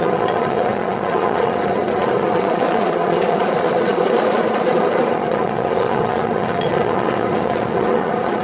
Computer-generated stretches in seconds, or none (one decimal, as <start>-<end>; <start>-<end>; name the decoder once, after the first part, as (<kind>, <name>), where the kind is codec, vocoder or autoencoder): 0.0-8.4 (vocoder, Vocos)